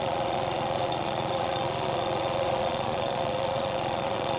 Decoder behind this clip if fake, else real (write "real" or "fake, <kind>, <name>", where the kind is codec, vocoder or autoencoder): fake, vocoder, Vocos